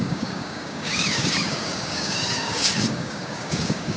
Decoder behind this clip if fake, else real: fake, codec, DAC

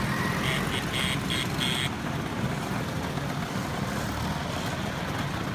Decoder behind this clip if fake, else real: real